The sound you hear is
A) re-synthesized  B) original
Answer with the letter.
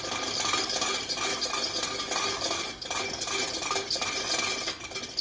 B